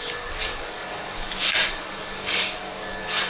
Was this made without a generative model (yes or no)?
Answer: no